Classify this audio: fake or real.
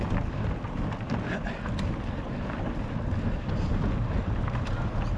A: real